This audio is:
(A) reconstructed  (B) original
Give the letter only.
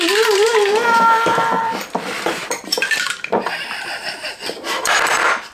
A